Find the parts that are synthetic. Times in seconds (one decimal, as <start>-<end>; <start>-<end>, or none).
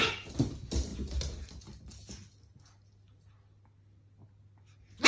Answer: none